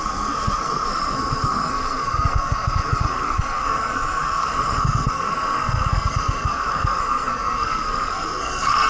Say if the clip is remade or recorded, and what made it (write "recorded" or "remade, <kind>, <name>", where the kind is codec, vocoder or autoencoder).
remade, codec, SNAC